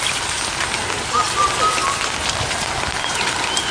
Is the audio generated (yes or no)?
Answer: no